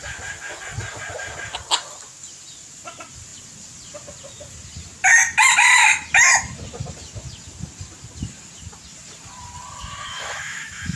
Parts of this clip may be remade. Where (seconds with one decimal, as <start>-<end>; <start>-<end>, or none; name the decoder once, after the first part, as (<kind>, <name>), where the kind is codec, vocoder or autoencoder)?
10.1-11.0 (autoencoder, DAC-VAE)